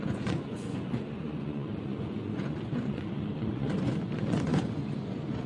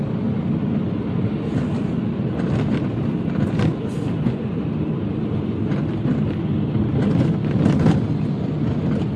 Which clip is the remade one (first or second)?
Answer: first